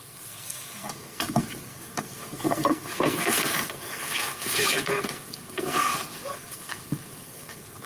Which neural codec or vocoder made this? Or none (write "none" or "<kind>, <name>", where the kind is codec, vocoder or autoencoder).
codec, SNAC